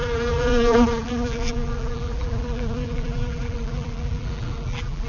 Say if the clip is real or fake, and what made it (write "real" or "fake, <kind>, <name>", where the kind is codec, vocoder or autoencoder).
fake, vocoder, BigVGAN v2